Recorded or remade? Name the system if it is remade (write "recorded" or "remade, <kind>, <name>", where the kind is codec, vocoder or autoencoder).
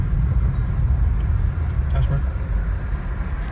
recorded